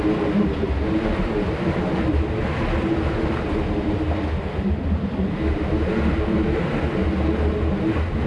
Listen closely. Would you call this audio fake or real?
real